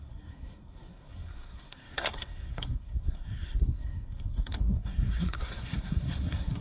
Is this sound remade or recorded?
remade